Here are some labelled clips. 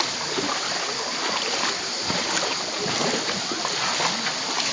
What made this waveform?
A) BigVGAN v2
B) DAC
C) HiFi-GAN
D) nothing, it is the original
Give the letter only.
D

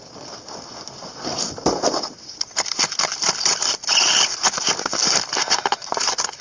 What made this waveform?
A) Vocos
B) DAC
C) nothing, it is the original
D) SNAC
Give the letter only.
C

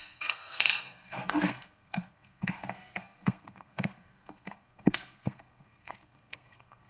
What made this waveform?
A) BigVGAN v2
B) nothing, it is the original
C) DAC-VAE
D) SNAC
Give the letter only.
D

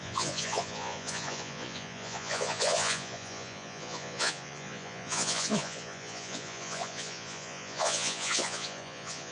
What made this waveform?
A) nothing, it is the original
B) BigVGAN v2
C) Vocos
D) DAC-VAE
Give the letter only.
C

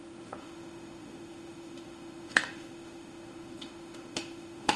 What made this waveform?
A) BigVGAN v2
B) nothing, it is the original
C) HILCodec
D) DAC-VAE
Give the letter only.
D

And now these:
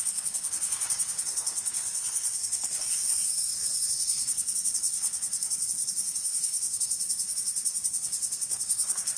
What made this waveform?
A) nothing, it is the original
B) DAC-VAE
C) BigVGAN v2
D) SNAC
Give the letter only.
D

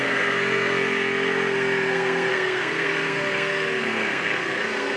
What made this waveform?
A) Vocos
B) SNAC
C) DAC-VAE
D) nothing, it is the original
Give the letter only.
B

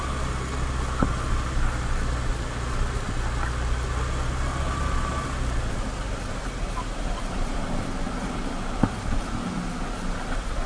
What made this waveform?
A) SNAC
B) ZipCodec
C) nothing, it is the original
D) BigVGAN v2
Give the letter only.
C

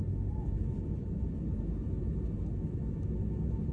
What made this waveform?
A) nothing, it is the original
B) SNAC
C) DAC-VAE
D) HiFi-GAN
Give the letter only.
C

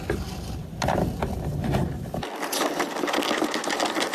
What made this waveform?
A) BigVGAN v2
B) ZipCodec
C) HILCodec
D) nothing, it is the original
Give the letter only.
D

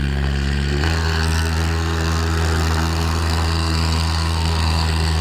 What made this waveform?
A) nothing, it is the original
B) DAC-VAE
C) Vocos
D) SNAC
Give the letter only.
D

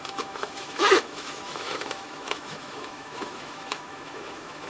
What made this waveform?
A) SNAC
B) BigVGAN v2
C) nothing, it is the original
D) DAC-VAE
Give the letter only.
D